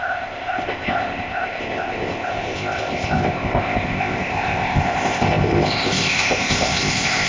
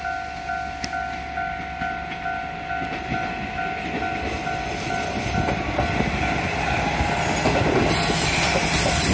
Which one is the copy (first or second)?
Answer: first